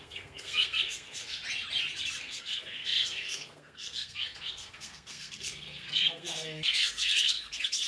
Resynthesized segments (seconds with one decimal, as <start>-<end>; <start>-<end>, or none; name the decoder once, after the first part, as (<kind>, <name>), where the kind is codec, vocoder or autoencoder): 0.0-1.4 (codec, SNAC); 2.2-7.9